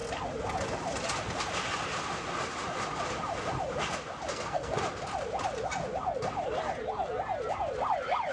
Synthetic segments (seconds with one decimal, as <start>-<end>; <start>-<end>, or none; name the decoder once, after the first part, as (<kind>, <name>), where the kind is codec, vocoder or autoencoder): 4.3-4.8 (codec, SNAC)